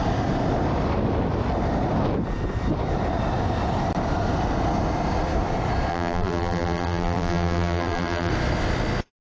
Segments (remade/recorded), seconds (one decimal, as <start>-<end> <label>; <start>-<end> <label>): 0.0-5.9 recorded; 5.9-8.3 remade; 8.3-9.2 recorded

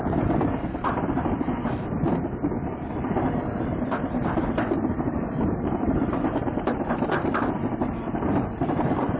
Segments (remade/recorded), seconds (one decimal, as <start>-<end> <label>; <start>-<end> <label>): 0.0-9.2 remade

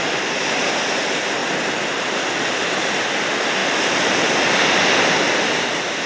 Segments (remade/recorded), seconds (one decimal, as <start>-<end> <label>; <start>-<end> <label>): 0.0-3.6 recorded; 3.6-4.4 remade; 4.4-6.1 recorded

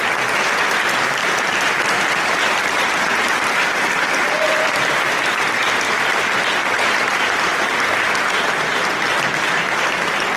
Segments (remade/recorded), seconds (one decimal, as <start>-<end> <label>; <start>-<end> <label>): 0.0-1.2 recorded; 1.2-5.6 remade; 5.6-10.4 recorded